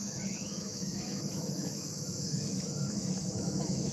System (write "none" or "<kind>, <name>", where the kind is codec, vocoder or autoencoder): autoencoder, DAC-VAE